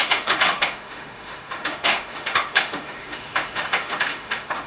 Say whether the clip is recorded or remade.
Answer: remade